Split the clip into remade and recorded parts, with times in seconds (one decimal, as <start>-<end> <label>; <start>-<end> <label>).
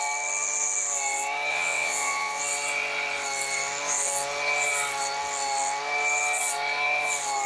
0.0-1.5 recorded; 1.5-2.4 remade; 2.4-7.5 recorded